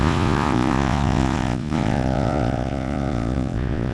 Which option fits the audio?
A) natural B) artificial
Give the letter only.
B